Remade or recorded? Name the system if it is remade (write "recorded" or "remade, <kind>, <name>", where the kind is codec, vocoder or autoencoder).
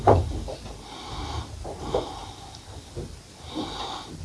recorded